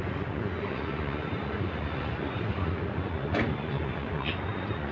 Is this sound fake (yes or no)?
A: yes